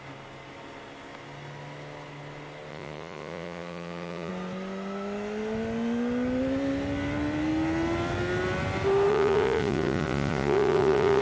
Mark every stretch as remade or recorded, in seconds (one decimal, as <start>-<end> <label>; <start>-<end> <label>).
0.0-2.7 recorded; 2.7-4.3 remade; 4.3-9.1 recorded; 9.1-11.2 remade